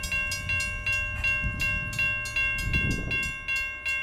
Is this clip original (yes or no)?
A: yes